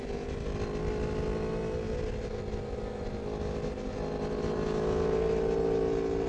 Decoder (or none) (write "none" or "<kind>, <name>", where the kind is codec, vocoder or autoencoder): none